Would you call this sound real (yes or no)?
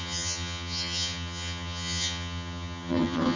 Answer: no